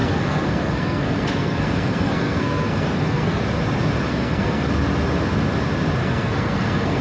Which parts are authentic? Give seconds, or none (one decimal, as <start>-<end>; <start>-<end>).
3.4-4.1; 4.7-6.0